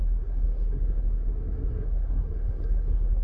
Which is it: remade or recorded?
remade